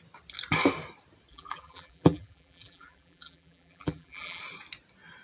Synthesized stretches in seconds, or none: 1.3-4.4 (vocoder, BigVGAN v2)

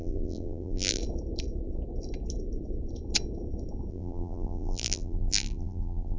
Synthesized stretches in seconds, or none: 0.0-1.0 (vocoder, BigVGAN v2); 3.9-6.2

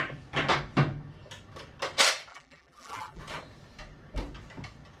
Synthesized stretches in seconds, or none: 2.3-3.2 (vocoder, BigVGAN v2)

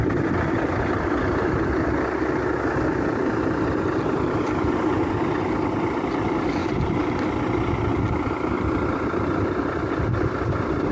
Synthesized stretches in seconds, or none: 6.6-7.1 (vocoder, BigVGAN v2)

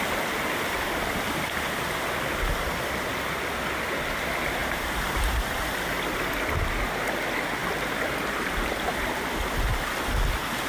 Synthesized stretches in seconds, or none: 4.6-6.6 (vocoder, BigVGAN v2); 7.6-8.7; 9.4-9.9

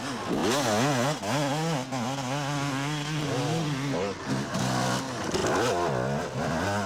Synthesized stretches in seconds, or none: none